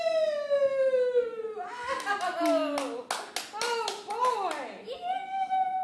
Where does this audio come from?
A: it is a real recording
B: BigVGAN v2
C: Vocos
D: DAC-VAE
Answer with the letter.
A